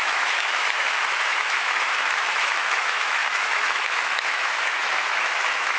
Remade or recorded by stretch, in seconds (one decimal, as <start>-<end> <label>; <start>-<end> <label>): 0.0-5.8 remade